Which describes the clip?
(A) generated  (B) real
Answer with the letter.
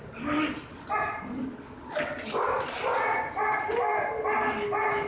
B